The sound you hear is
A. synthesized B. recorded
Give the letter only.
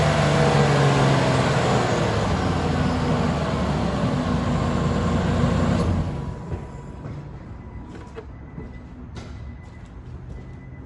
B